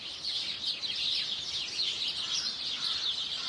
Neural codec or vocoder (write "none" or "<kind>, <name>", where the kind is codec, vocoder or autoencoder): none